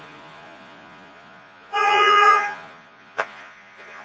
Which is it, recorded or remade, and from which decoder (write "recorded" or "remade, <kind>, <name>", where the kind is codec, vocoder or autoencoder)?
remade, vocoder, Vocos